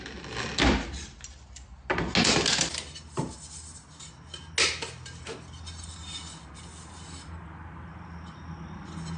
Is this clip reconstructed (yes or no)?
no